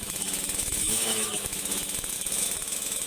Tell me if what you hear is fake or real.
fake